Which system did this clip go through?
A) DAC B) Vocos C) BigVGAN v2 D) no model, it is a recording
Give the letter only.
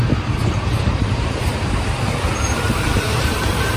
C